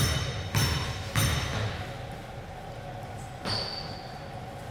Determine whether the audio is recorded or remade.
recorded